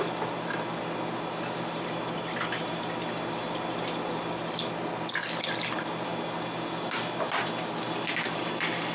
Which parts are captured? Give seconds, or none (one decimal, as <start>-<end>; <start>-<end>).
6.1-8.1